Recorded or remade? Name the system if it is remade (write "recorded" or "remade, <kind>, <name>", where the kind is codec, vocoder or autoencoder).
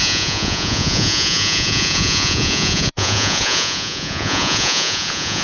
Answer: remade, vocoder, Vocos